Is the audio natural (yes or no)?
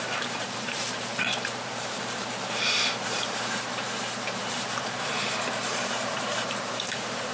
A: no